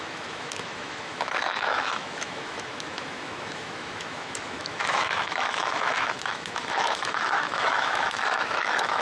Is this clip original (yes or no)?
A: no